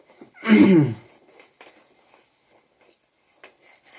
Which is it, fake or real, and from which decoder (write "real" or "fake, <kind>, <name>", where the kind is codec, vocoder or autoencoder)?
real